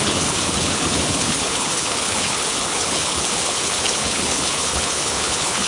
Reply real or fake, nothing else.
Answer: fake